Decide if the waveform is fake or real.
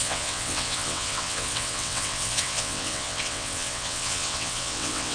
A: fake